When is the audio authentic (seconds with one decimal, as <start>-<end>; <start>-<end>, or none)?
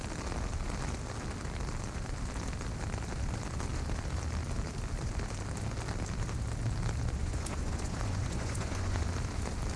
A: 0.0-7.2; 9.0-9.8